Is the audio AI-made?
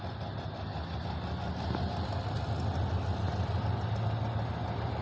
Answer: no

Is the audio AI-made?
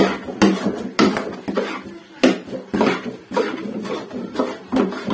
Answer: no